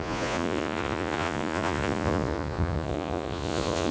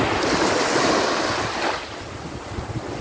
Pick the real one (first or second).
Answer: second